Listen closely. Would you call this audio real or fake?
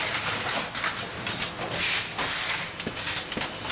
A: real